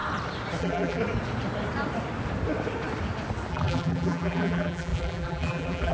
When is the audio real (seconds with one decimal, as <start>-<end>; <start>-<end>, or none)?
0.0-0.6; 1.0-3.5

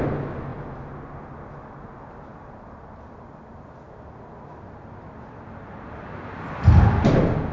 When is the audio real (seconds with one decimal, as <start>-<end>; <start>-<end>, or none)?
0.0-7.5

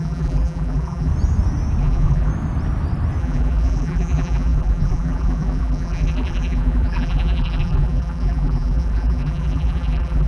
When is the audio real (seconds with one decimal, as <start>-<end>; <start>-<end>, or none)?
1.1-1.8; 2.3-3.2

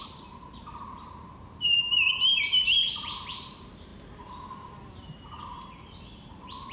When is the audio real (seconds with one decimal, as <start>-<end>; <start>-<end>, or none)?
none

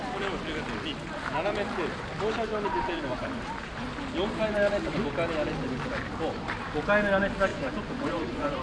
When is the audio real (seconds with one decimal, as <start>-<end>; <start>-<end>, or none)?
0.0-7.5